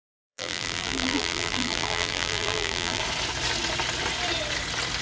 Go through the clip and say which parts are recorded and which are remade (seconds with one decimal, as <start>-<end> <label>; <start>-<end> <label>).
0.0-3.0 remade; 3.0-5.0 recorded